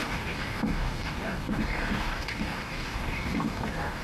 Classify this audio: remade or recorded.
remade